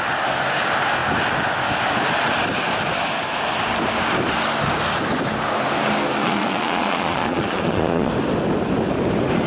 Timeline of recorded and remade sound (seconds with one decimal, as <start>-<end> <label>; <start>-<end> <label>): 0.0-6.2 recorded; 6.2-8.1 remade; 8.1-9.5 recorded